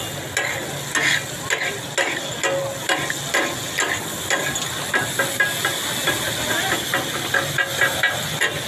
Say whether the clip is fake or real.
real